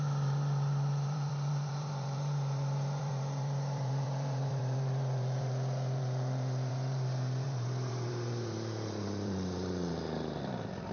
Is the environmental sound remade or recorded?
remade